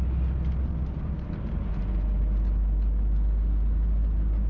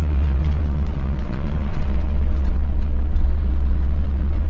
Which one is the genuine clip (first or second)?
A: first